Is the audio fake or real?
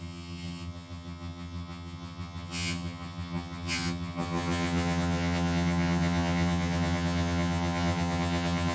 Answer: fake